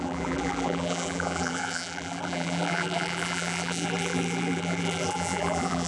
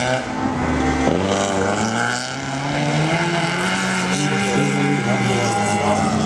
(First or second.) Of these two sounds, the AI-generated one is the first